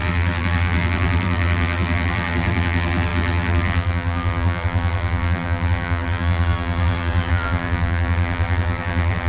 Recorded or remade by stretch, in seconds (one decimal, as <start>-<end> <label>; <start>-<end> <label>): 0.0-9.3 remade

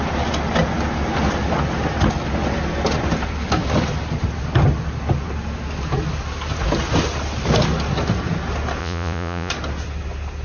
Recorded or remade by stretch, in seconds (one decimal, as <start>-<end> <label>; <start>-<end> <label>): 0.0-8.8 recorded; 8.8-9.5 remade; 9.5-10.4 recorded